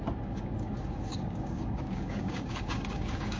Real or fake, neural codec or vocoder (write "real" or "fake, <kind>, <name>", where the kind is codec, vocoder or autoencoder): fake, codec, DAC